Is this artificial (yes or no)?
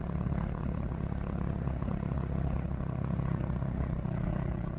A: yes